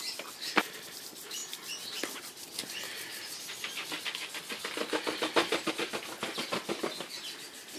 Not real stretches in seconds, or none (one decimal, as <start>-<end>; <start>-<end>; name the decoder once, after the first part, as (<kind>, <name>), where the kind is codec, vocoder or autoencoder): none